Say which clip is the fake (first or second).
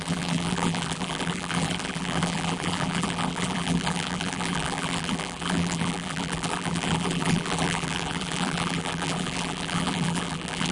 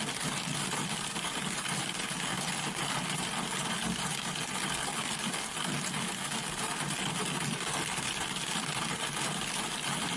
first